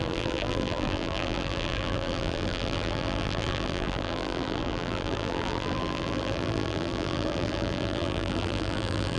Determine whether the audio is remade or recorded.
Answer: remade